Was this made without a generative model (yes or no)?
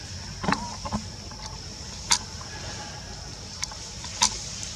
yes